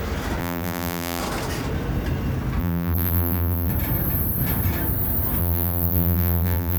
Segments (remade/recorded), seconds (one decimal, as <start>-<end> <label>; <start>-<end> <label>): 0.0-0.4 recorded; 0.4-1.2 remade; 1.2-2.6 recorded; 2.6-3.7 remade; 3.7-5.4 recorded; 5.4-6.8 remade